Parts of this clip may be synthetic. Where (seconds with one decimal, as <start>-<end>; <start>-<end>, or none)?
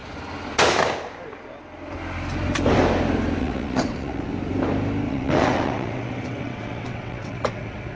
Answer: 3.4-4.3; 5.1-8.0